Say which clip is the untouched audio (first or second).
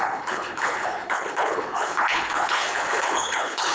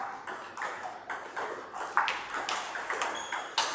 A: second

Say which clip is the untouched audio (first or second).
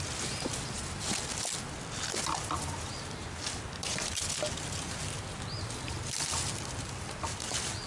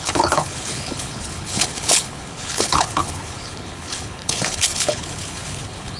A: first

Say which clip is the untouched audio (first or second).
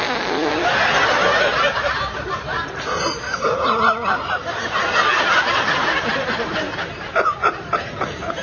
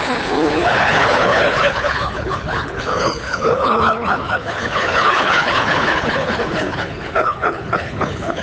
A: first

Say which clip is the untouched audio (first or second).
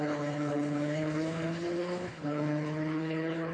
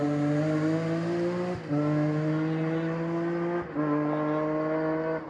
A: second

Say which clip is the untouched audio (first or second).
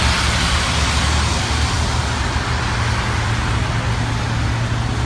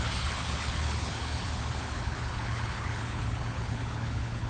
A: first